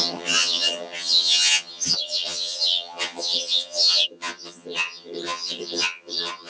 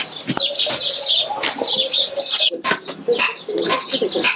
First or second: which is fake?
first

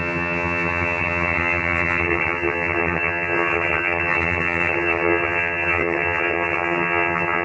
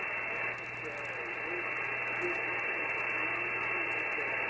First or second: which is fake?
first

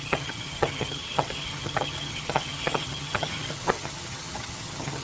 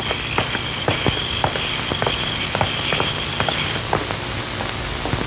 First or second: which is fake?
first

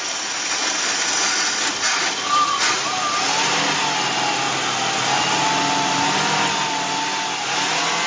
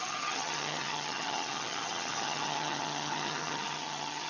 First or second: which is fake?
second